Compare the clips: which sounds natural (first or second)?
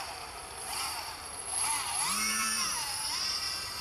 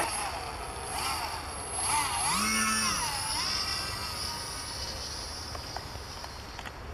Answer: second